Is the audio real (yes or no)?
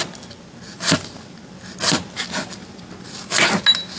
yes